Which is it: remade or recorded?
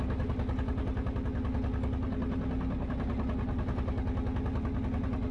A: recorded